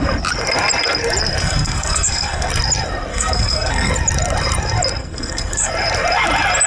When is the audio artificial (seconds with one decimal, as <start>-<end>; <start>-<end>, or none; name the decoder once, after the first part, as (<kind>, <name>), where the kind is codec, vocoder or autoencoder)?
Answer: 1.4-2.5 (codec, SNAC); 3.1-3.9; 5.0-5.7